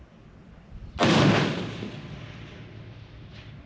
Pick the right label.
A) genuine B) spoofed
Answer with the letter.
A